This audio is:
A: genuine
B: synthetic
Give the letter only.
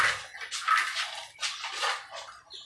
A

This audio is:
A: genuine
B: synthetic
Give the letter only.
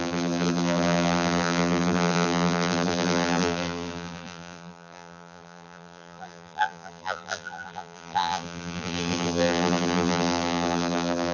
B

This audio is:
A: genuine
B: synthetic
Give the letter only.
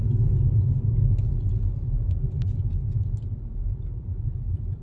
A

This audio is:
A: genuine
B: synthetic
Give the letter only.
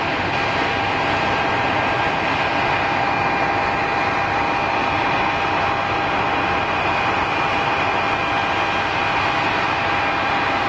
A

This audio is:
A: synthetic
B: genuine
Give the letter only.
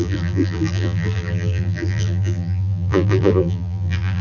A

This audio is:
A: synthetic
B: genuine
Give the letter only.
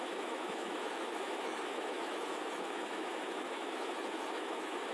A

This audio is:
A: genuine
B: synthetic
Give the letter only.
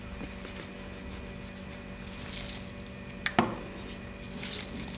A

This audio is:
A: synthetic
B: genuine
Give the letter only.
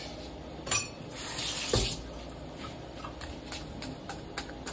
B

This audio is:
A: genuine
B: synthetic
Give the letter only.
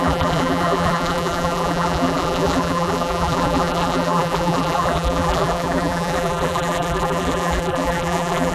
B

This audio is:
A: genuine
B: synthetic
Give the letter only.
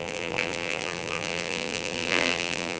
B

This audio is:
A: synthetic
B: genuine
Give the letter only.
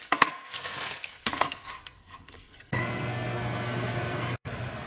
A